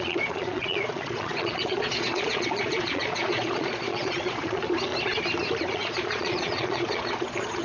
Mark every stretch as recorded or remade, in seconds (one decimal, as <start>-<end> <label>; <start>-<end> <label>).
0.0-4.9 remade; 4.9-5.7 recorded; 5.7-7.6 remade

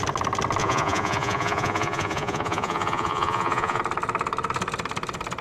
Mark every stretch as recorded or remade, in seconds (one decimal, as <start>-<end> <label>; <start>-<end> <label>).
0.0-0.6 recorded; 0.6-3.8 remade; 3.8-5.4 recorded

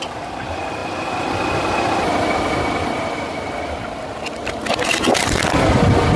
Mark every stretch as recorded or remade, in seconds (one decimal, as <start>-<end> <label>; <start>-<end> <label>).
0.0-6.2 recorded